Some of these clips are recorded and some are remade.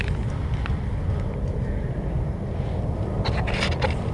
recorded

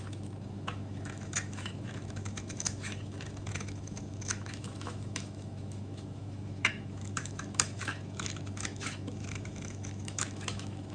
remade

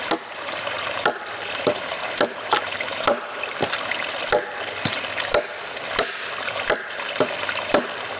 remade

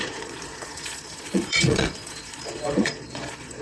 remade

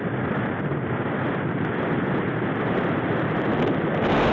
recorded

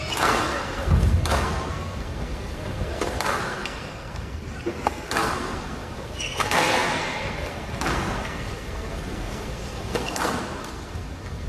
remade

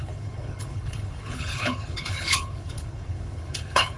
remade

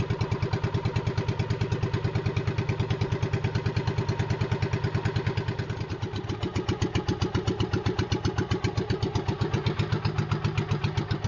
recorded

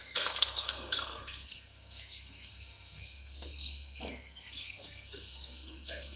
remade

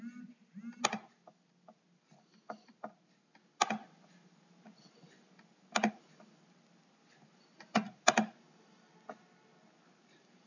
recorded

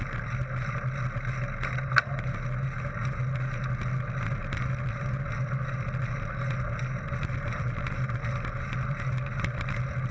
recorded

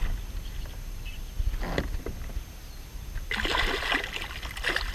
recorded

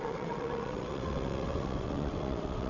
remade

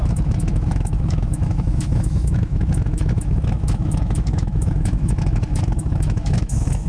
remade